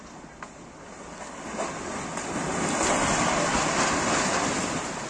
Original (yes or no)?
yes